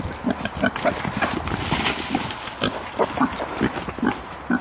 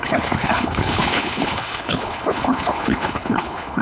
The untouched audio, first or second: first